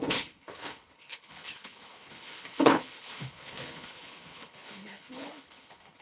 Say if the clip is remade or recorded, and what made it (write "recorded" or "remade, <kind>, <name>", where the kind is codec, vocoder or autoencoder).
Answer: remade, codec, HILCodec